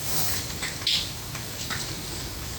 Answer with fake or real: fake